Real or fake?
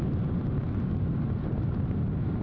real